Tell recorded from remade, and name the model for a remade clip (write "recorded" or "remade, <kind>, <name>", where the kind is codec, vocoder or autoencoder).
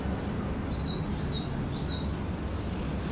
recorded